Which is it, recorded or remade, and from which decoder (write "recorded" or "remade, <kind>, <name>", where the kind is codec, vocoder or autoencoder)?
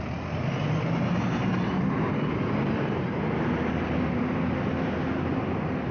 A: recorded